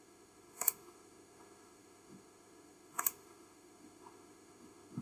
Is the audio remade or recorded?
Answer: remade